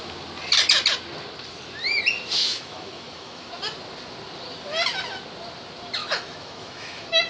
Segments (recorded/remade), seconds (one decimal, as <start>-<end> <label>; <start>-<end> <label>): 0.0-2.4 recorded; 2.4-3.5 remade; 3.5-6.0 recorded; 6.0-7.3 remade